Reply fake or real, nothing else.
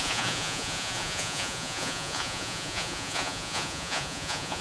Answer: fake